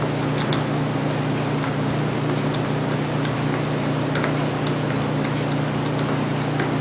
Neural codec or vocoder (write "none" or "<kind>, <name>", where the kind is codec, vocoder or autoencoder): none